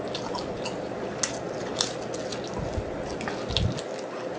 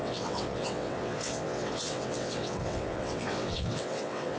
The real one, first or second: first